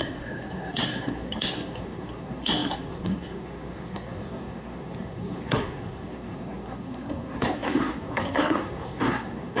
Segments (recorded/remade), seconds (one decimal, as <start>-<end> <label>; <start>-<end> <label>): 0.0-9.6 remade